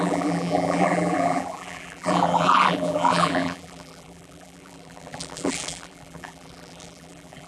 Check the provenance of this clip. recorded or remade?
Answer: remade